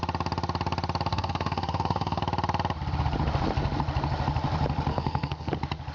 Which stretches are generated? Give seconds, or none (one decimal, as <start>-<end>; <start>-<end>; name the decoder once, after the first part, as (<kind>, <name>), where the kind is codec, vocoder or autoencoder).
1.1-2.2 (codec, SNAC); 4.9-5.5